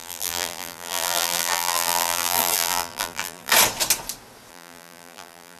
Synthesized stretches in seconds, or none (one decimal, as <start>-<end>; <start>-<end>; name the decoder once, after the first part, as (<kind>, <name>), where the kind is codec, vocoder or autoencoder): 0.0-3.5 (vocoder, BigVGAN v2); 4.5-5.6